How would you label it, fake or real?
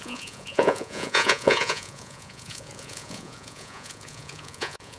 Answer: fake